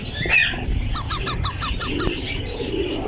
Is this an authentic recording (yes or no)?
yes